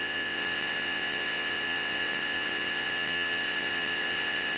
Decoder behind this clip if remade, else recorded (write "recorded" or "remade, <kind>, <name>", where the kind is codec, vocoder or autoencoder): remade, vocoder, WaveNeXt